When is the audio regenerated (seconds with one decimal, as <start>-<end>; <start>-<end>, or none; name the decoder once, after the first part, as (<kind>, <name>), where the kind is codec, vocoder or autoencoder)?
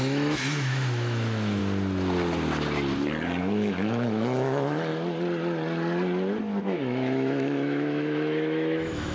0.0-1.6 (autoencoder, DAC-VAE); 3.4-4.9; 6.6-9.1